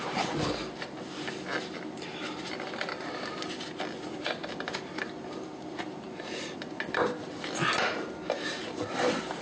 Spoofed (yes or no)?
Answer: no